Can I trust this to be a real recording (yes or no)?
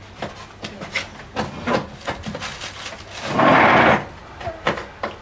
yes